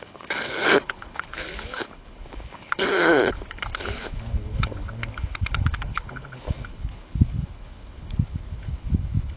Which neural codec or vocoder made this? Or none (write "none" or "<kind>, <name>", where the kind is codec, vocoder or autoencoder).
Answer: codec, HILCodec